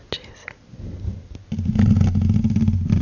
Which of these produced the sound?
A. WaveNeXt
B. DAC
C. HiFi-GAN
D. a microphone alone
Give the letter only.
D